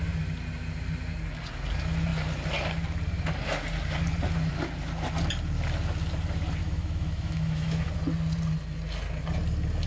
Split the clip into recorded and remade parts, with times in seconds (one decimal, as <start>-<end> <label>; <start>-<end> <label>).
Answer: 0.0-6.6 recorded; 6.6-7.9 remade; 7.9-9.9 recorded